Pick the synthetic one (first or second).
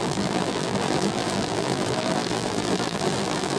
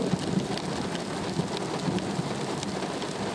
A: first